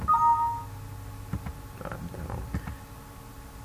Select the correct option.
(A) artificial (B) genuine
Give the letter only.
B